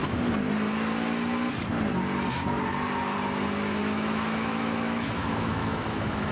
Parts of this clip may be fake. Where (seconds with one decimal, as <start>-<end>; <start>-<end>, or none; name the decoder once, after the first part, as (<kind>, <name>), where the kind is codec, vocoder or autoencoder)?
3.8-6.3 (autoencoder, DAC-VAE)